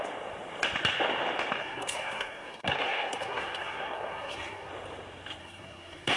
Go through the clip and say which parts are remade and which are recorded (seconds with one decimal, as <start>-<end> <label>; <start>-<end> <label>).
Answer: 0.0-1.6 recorded; 1.6-4.7 remade; 4.7-5.4 recorded; 5.4-6.2 remade